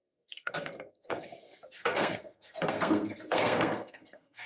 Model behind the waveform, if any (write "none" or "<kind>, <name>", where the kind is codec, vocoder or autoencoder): codec, SNAC